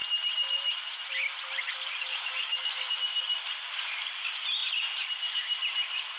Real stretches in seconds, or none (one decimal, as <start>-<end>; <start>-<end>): 0.0-2.1; 3.0-6.2